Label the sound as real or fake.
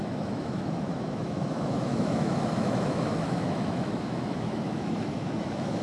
fake